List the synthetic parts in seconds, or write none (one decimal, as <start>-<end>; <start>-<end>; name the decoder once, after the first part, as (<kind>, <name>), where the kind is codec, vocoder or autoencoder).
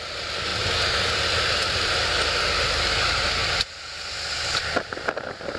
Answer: none